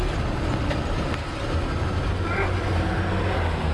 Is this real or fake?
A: real